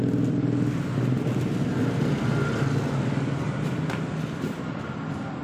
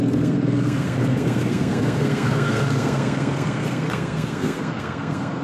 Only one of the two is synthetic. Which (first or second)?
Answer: second